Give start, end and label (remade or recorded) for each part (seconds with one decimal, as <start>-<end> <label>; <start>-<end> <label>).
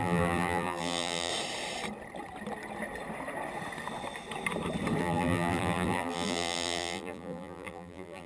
0.0-1.3 remade; 1.3-5.0 recorded; 5.0-8.3 remade